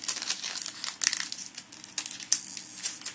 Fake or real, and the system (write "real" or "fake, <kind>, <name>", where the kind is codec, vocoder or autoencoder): real